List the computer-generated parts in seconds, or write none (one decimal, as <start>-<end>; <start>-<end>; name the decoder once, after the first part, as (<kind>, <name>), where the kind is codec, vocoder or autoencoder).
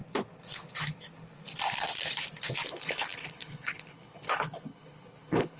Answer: 2.7-5.6 (codec, HILCodec)